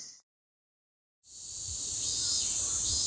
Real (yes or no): no